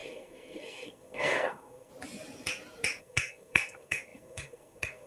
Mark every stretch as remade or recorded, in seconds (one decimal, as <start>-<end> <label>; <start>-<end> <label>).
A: 0.0-1.9 remade; 1.9-3.0 recorded; 3.0-5.1 remade